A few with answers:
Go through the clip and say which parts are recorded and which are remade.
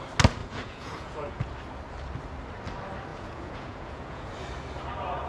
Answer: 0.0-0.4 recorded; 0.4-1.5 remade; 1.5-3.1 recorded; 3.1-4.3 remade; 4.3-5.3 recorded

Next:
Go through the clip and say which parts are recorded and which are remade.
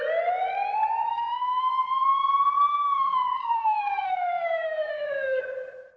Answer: 0.0-1.1 recorded; 1.1-1.7 remade; 1.7-2.7 recorded; 2.7-5.4 remade; 5.4-6.0 recorded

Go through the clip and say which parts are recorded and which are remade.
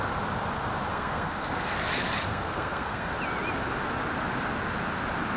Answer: 0.0-0.9 recorded; 0.9-1.7 remade; 1.7-2.3 recorded; 2.3-3.1 remade; 3.1-5.4 recorded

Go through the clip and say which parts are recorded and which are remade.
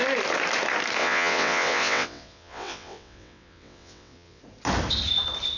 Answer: 0.0-1.0 recorded; 1.0-4.4 remade; 4.4-5.6 recorded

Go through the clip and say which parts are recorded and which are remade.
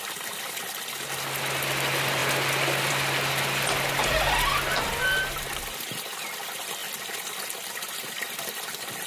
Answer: 0.0-9.1 recorded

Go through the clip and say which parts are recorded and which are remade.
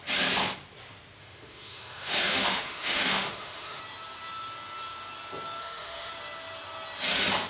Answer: 0.0-1.2 recorded; 1.2-3.8 remade; 3.8-5.6 recorded; 5.6-6.1 remade; 6.1-7.5 recorded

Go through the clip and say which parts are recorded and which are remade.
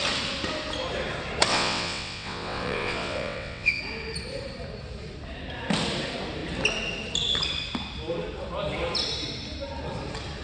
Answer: 0.0-1.5 recorded; 1.5-3.8 remade; 3.8-10.4 recorded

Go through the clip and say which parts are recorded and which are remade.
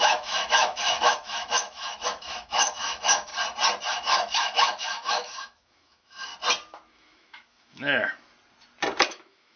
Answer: 0.0-3.3 remade; 3.3-3.9 recorded; 3.9-6.3 remade; 6.3-6.9 recorded; 6.9-8.0 remade; 8.0-9.1 recorded; 9.1-9.6 remade